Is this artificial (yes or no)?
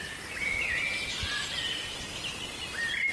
no